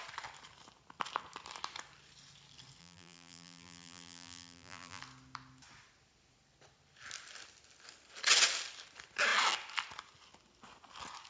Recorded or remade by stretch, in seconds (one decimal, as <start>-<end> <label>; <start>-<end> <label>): 0.0-2.8 recorded; 2.8-5.0 remade; 5.0-11.3 recorded